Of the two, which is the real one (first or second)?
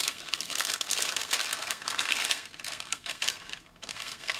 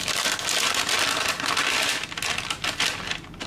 second